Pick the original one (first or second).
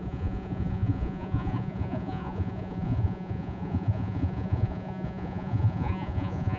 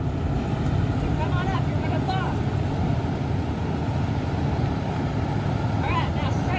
second